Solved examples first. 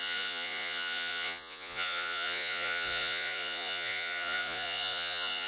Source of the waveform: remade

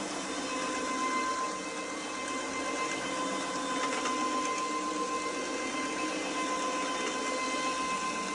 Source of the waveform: recorded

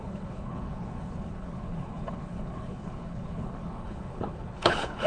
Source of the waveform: remade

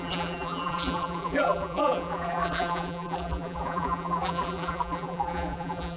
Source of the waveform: remade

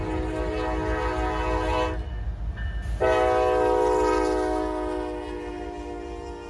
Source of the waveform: recorded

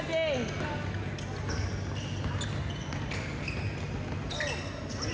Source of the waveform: recorded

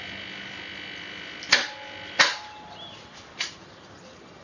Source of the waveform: recorded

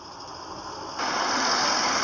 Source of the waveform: recorded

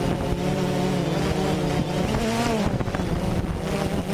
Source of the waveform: recorded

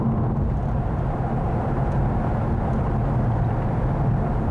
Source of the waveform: recorded